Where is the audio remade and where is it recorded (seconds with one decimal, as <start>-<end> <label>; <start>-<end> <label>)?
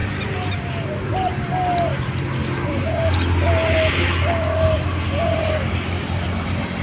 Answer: 0.0-6.8 recorded